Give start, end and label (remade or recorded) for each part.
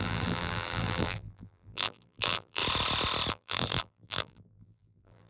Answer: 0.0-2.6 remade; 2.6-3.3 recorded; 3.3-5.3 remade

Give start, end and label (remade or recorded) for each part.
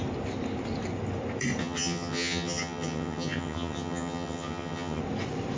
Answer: 0.0-1.6 recorded; 1.6-5.0 remade; 5.0-5.6 recorded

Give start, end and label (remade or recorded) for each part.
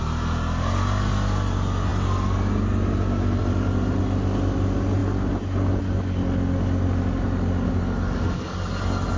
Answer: 0.0-9.2 recorded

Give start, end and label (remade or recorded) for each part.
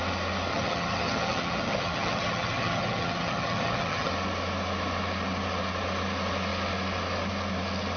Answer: 0.0-0.5 recorded; 0.5-4.1 remade; 4.1-8.0 recorded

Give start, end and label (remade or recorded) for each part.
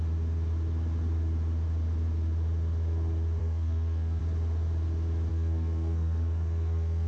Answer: 0.0-3.4 recorded; 3.4-4.2 remade; 4.2-5.3 recorded; 5.3-7.1 remade